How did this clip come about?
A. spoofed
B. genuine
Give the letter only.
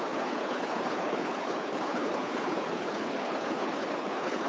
A